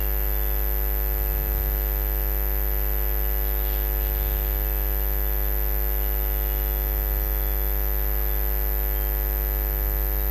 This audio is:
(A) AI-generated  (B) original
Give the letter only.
B